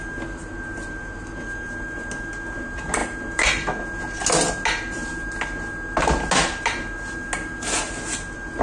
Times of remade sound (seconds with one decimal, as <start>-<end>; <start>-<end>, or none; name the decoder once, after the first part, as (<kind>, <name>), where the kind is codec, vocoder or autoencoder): none